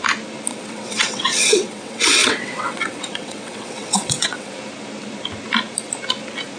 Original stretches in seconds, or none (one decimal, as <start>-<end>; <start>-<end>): 0.0-0.5; 4.5-6.6